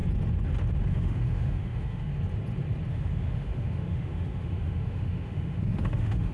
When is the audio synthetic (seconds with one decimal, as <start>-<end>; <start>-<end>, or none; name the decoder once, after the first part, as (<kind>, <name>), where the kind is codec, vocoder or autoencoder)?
0.9-2.1 (autoencoder, DAC-VAE); 2.9-6.3